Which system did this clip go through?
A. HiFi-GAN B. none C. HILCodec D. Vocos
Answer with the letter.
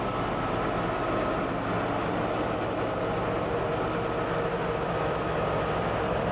B